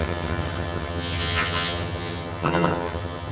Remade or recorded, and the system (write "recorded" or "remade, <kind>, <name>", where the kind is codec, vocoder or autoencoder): remade, vocoder, HiFi-GAN